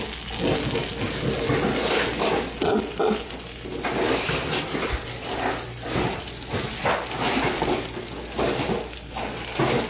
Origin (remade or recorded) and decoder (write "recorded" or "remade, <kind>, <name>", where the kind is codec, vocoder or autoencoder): recorded